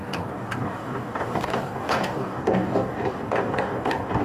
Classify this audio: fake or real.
fake